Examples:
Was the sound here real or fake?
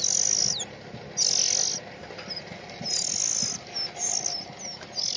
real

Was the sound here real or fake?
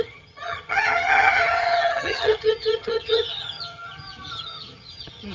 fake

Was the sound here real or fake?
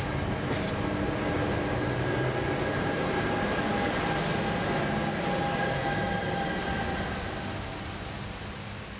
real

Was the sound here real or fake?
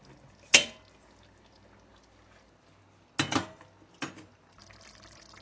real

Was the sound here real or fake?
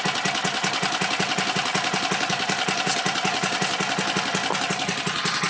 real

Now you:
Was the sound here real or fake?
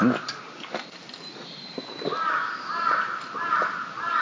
real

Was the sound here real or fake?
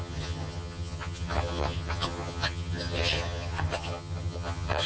fake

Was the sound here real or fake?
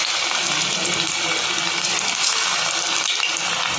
real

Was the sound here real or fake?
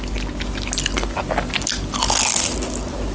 real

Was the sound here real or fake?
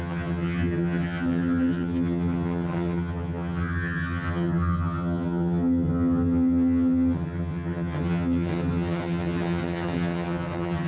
fake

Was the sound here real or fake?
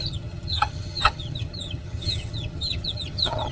fake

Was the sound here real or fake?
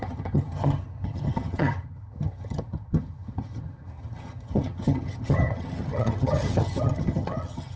fake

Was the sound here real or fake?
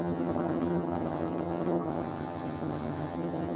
fake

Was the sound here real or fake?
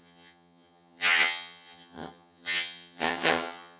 fake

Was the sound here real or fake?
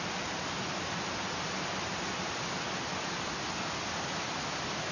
real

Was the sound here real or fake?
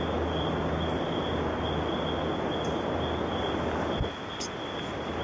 real